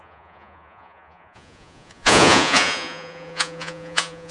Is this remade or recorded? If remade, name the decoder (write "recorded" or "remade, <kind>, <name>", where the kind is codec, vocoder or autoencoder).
remade, vocoder, Vocos